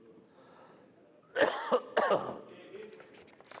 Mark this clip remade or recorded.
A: recorded